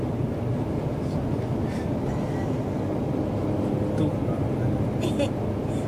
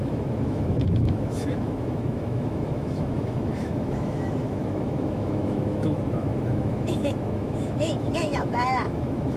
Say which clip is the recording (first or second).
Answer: first